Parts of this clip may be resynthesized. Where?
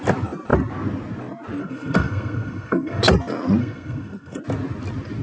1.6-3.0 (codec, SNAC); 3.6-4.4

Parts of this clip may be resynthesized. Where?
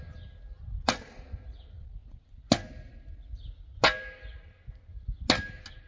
none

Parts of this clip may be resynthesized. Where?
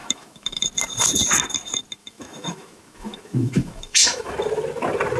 0.0-0.6 (autoencoder, DAC-VAE); 2.0-4.3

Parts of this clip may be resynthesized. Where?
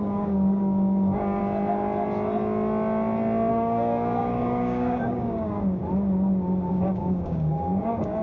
0.0-1.4 (codec, DAC); 3.5-5.8; 6.7-8.2